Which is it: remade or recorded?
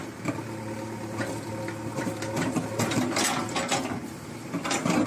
recorded